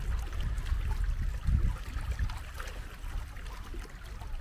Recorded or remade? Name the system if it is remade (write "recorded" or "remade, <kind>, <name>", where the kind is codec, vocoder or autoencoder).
recorded